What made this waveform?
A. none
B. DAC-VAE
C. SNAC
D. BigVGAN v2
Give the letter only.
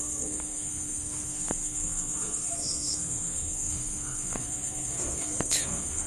C